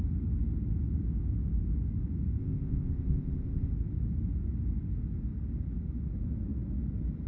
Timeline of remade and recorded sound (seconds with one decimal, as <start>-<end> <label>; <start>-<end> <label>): 0.0-2.4 recorded; 2.4-3.7 remade; 3.7-7.3 recorded